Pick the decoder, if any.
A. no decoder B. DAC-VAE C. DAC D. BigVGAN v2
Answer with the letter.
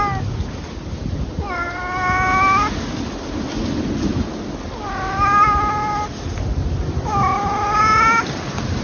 A